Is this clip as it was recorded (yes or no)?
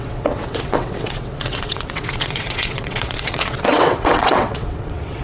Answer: no